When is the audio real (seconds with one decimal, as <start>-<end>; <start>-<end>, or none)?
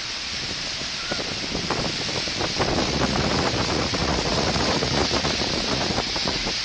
0.0-2.8